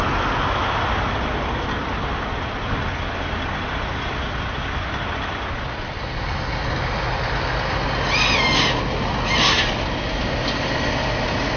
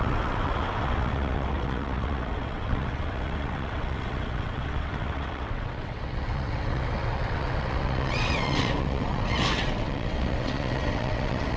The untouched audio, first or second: first